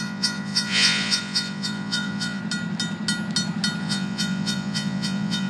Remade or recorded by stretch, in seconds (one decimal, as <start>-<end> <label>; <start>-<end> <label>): 0.0-2.4 remade; 2.4-3.8 recorded; 3.8-5.5 remade